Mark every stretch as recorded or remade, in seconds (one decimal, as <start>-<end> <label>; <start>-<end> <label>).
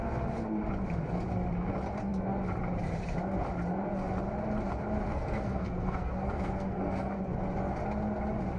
0.0-5.1 recorded; 5.1-7.2 remade; 7.2-8.6 recorded